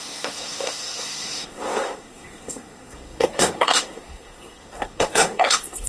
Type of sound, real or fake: fake